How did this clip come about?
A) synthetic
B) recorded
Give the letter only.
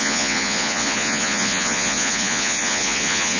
A